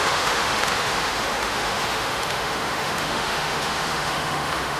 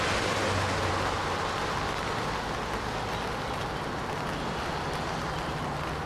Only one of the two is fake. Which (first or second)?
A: first